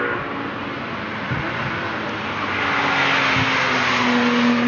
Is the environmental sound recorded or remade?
recorded